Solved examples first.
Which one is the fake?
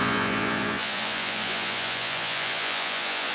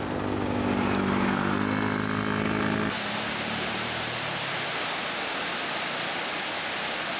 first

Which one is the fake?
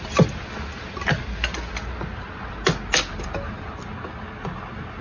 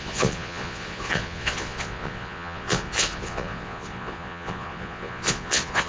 second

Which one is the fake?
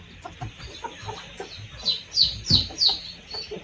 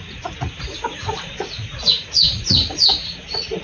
second